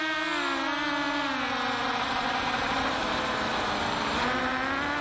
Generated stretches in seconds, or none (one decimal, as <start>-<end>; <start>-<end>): 1.8-4.5